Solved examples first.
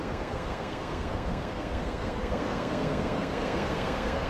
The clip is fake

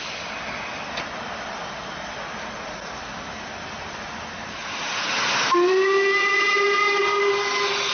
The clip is real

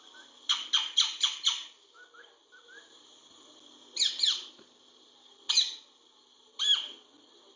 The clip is real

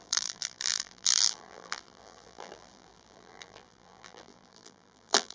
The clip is fake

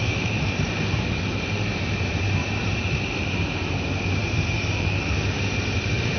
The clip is fake